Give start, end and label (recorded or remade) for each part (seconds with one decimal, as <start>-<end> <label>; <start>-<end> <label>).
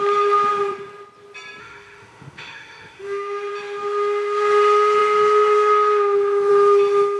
0.0-1.6 recorded; 1.6-3.5 remade; 3.5-7.2 recorded